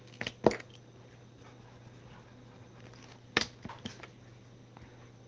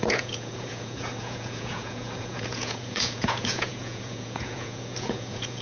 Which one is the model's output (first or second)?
second